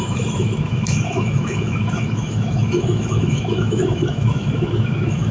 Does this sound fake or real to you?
fake